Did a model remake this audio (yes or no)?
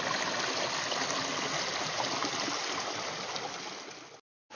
no